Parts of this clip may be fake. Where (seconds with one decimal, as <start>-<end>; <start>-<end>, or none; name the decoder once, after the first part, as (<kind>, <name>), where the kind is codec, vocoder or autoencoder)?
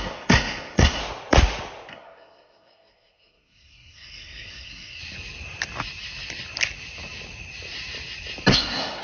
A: 0.0-1.0 (codec, SNAC); 1.9-5.0; 8.5-9.0